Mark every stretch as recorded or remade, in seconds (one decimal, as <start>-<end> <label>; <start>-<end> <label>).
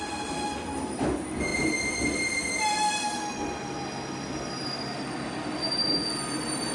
0.0-6.7 recorded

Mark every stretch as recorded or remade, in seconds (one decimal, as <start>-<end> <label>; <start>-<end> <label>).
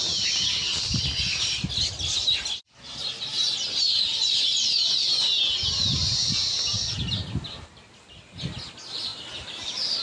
0.0-10.0 recorded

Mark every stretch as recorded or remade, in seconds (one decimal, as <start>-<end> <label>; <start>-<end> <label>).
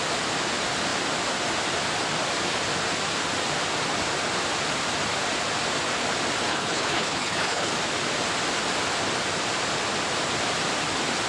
0.0-6.5 recorded; 6.5-7.7 remade; 7.7-11.3 recorded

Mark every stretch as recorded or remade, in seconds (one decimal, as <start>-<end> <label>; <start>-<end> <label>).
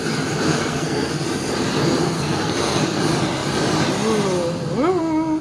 0.0-0.5 recorded; 0.5-1.1 remade; 1.1-2.0 recorded; 2.0-3.0 remade; 3.0-5.4 recorded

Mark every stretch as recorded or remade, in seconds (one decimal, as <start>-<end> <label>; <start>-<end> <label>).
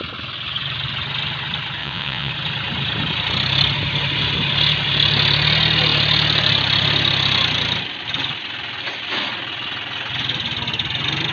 0.0-1.8 recorded; 1.8-2.3 remade; 2.3-11.3 recorded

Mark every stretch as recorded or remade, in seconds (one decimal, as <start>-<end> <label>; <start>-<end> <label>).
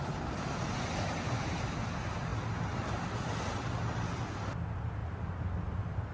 0.0-6.1 recorded